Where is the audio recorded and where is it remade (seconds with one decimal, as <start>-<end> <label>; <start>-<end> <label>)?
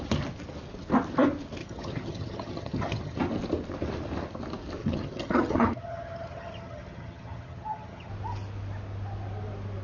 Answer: 0.0-1.6 recorded; 1.6-3.2 remade; 3.2-4.8 recorded; 4.8-8.1 remade; 8.1-9.8 recorded